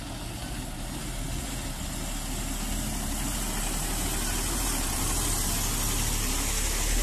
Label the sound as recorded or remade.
recorded